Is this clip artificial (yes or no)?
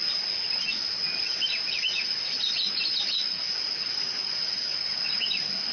no